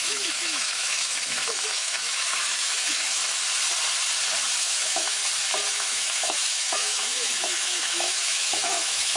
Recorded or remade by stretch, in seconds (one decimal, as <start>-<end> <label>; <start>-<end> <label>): 0.0-3.2 remade; 3.2-4.6 recorded; 4.6-5.2 remade; 5.2-5.7 recorded; 5.7-9.2 remade